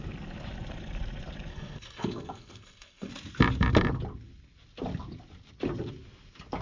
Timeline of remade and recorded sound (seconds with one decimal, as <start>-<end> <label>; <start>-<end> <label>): 0.0-1.5 recorded; 1.5-3.1 remade; 3.1-6.6 recorded